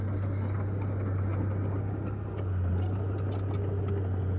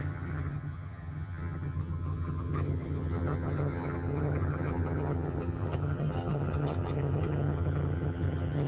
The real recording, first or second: first